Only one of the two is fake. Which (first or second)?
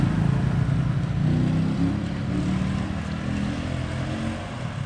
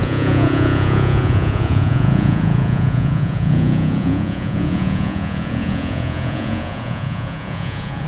second